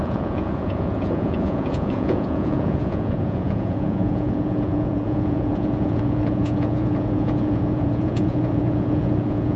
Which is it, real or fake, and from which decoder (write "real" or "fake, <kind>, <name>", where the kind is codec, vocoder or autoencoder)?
fake, vocoder, Vocos